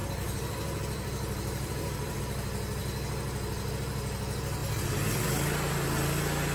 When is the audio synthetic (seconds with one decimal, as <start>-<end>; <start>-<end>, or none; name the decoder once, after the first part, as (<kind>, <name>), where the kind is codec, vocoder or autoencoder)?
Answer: 0.0-2.2 (vocoder, BigVGAN v2); 4.6-5.7